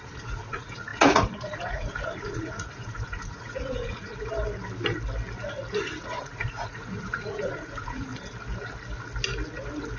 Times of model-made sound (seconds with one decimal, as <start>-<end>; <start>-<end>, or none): 0.0-4.1; 5.8-8.1